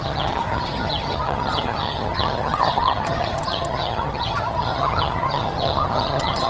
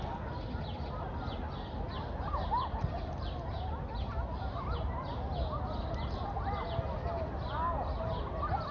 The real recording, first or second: second